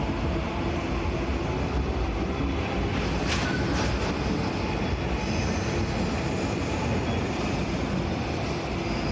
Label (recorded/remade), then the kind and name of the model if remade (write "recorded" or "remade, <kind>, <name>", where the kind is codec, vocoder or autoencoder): recorded